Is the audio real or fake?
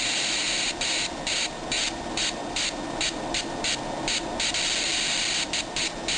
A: real